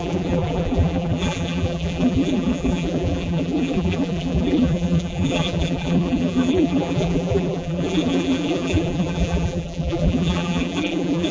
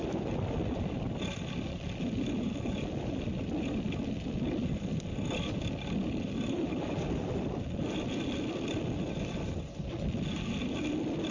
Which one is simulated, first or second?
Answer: first